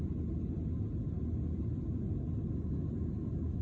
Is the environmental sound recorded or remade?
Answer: recorded